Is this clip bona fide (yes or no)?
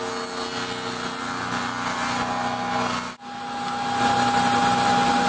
yes